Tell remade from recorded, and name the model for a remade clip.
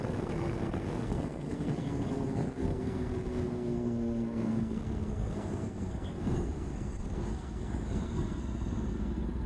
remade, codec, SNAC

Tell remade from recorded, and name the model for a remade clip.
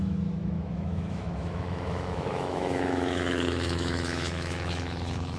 remade, autoencoder, DAC-VAE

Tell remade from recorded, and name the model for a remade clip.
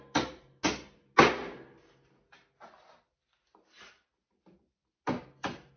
recorded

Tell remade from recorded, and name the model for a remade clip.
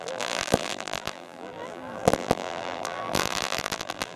remade, vocoder, BigVGAN v2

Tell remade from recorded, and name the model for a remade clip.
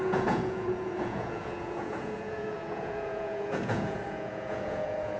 remade, vocoder, Vocos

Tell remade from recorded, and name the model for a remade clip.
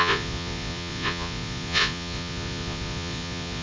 remade, vocoder, Vocos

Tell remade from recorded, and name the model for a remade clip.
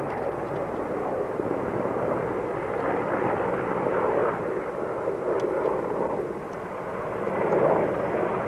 recorded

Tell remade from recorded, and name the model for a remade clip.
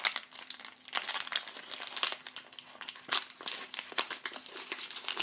recorded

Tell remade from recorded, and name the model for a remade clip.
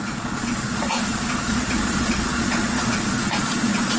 remade, vocoder, Vocos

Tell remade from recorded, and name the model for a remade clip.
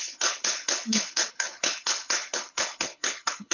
remade, codec, HILCodec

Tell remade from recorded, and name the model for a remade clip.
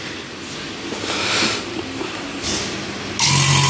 recorded